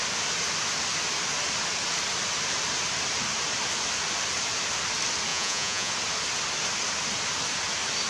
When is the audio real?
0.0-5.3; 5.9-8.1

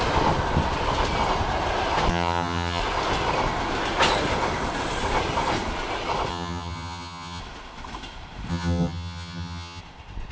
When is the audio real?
0.0-2.1; 2.8-6.3; 7.4-8.5; 9.8-10.3

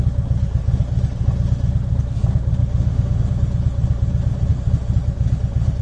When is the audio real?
0.0-2.6; 3.2-5.8

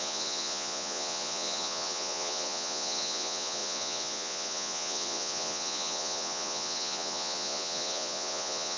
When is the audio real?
none

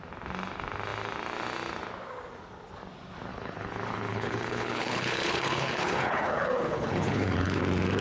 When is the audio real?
0.0-3.3; 7.6-8.0